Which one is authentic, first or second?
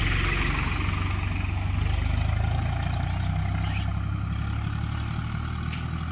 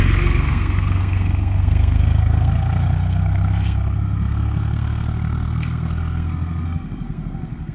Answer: first